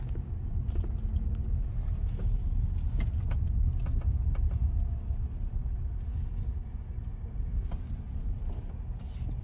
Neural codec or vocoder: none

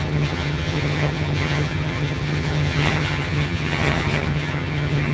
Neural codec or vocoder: vocoder, HiFi-GAN